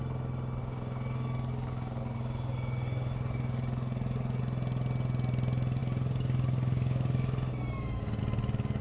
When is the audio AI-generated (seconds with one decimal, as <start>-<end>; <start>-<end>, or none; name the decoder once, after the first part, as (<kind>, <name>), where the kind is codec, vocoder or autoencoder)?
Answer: 0.6-4.4 (codec, DAC); 5.8-8.2